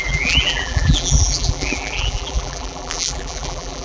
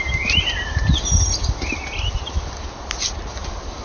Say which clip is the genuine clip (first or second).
second